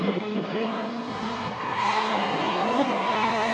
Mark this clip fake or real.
fake